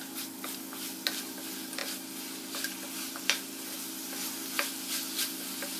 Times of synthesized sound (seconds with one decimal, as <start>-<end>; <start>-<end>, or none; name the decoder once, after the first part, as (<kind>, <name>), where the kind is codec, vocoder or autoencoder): none